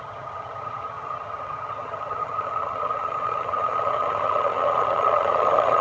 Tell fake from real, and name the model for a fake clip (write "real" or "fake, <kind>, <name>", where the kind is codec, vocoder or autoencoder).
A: fake, vocoder, HiFi-GAN